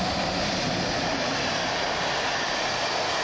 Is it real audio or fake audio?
real